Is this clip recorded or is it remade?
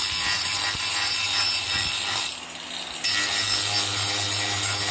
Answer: recorded